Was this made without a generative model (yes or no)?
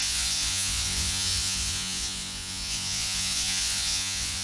no